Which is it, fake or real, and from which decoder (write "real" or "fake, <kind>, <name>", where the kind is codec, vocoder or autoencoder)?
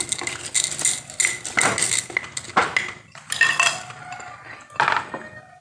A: real